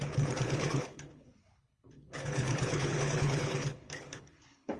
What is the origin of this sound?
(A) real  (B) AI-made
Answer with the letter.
B